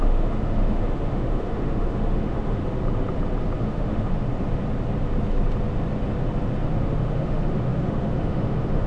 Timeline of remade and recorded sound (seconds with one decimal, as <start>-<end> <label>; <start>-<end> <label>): 0.0-2.6 remade; 2.6-3.6 recorded; 3.6-4.3 remade; 4.3-6.7 recorded; 6.7-8.9 remade